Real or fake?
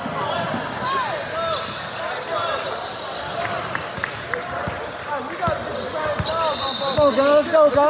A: real